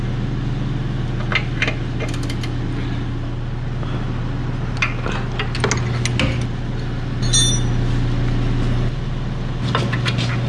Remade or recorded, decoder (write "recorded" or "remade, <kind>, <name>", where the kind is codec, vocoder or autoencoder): recorded